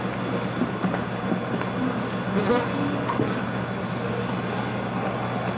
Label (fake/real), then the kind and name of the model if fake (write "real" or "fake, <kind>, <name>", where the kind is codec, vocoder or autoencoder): real